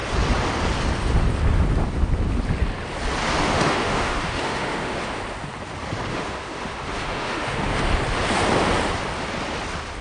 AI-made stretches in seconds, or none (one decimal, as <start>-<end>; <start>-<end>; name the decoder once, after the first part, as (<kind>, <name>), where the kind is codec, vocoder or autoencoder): 3.4-5.2 (autoencoder, DAC-VAE); 6.1-7.8